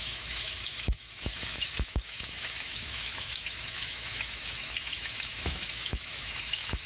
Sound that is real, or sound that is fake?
fake